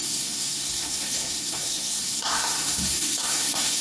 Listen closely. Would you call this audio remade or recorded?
remade